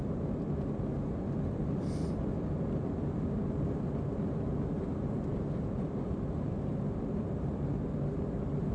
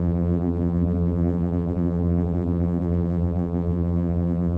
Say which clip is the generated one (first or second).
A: second